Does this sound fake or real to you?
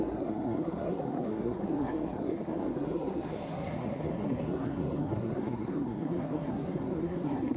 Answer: fake